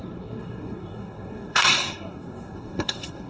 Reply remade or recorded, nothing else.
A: remade